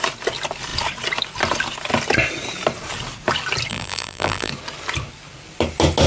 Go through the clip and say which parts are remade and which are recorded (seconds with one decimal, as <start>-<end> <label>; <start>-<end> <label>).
0.0-3.7 recorded; 3.7-4.5 remade; 4.5-6.1 recorded